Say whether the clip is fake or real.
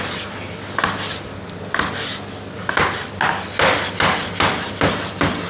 real